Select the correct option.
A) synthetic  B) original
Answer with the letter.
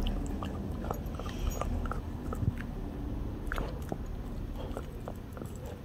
B